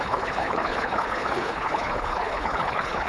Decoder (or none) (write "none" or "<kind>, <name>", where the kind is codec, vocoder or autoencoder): codec, HILCodec